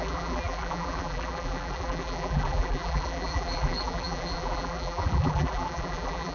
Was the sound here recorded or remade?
remade